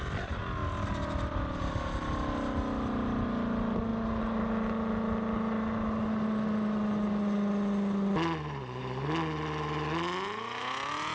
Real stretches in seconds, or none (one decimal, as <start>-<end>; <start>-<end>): 0.0-11.1